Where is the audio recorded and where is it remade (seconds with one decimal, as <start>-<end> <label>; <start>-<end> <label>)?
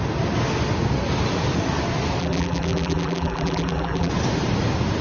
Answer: 0.0-2.2 recorded; 2.2-4.1 remade; 4.1-5.0 recorded